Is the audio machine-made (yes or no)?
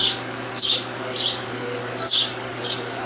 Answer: yes